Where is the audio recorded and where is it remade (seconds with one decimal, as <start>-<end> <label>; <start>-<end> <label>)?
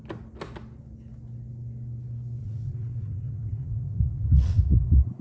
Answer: 0.0-2.4 recorded; 2.4-5.2 remade